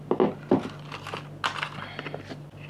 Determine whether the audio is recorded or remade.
recorded